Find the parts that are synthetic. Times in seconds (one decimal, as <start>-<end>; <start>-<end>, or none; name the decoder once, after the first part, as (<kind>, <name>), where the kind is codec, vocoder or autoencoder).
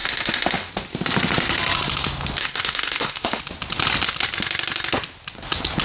0.0-0.7 (autoencoder, DAC-VAE); 2.4-3.4